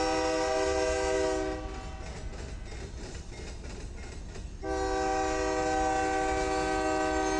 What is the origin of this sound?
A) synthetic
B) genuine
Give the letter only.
B